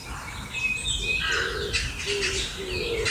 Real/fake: real